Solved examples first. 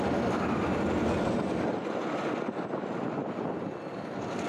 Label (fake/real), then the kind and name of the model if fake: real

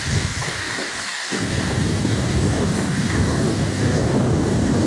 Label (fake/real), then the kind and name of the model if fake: fake, codec, DAC